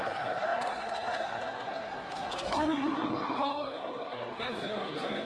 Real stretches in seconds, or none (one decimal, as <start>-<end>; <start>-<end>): none